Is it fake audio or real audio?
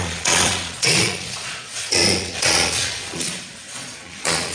fake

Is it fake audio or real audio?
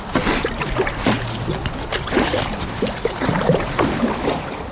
fake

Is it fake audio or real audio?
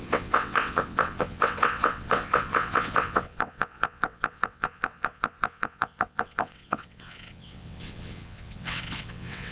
fake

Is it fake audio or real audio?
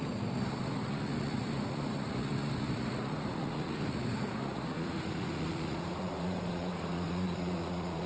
fake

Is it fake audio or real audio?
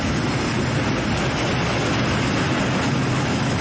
real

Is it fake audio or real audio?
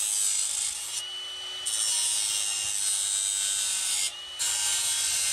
real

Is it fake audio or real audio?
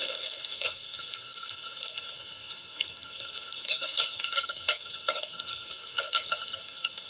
fake